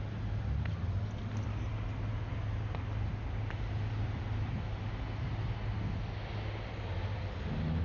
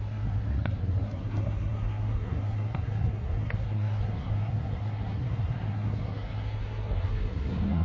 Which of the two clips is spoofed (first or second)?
second